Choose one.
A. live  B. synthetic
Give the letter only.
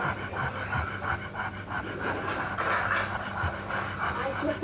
A